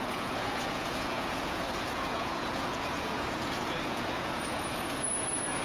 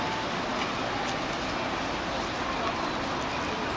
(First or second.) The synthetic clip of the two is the first